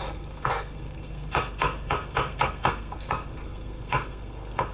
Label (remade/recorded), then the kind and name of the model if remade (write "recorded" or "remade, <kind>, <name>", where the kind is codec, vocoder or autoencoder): remade, codec, SNAC